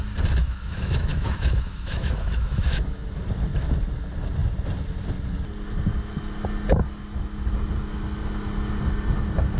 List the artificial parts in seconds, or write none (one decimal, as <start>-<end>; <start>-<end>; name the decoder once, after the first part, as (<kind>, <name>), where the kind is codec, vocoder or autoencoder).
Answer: 0.4-3.2 (autoencoder, DAC-VAE)